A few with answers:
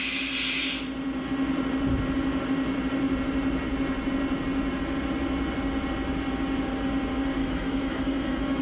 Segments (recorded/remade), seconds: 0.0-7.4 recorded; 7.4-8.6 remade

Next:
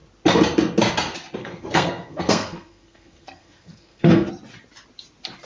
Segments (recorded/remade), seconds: 0.0-1.4 recorded; 1.4-4.3 remade; 4.3-5.5 recorded

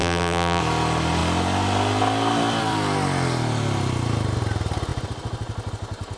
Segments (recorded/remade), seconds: 0.0-0.6 remade; 0.6-6.2 recorded

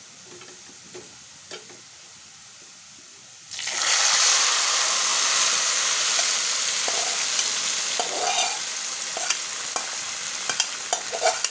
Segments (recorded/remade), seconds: 0.0-5.1 recorded; 5.1-6.1 remade; 6.1-11.5 recorded

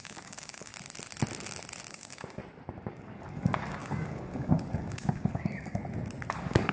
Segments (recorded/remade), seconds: 0.0-0.7 remade; 0.7-1.9 recorded; 1.9-2.4 remade; 2.4-2.9 recorded; 2.9-5.8 remade; 5.8-6.3 recorded; 6.3-6.7 remade

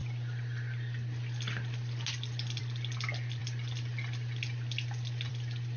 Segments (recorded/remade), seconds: 0.0-5.8 recorded

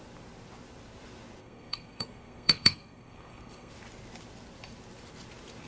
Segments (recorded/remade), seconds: 0.0-1.4 recorded; 1.4-3.7 remade; 3.7-5.7 recorded

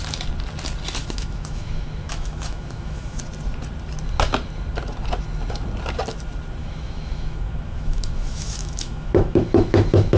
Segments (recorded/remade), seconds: 0.0-1.0 recorded; 1.0-3.2 remade; 3.2-6.6 recorded; 6.6-10.2 remade